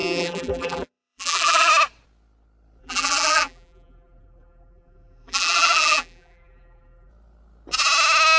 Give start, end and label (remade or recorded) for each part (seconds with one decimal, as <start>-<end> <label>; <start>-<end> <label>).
0.0-1.7 remade; 1.7-2.8 recorded; 2.8-7.1 remade; 7.1-8.4 recorded